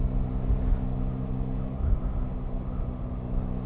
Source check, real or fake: real